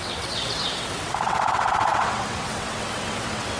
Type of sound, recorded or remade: remade